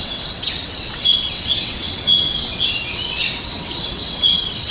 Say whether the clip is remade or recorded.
remade